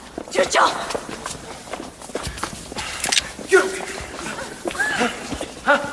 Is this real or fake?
real